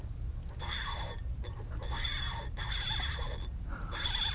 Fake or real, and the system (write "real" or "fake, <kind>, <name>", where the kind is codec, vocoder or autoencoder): fake, vocoder, BigVGAN v2